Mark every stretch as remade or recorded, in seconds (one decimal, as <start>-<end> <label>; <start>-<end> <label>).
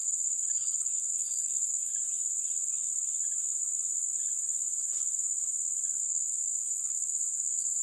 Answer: 0.0-2.0 remade; 2.0-6.0 recorded; 6.0-7.8 remade